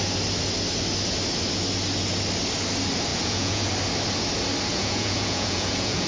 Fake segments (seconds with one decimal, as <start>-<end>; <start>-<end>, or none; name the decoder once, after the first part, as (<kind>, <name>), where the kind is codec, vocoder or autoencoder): 3.1-3.7 (vocoder, Vocos); 4.7-6.1